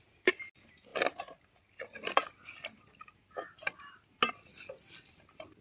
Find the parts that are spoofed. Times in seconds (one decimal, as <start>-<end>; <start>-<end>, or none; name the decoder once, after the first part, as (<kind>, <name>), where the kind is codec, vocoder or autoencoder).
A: none